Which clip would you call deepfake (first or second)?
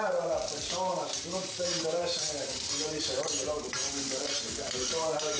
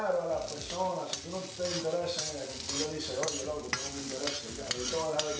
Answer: first